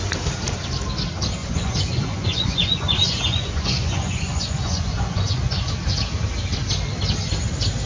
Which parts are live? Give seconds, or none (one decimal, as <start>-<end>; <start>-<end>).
0.0-1.4; 5.7-7.9